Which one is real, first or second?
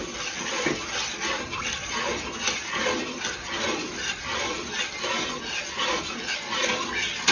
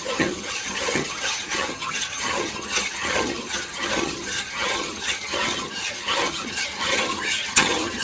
first